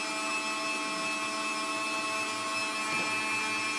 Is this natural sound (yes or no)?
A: yes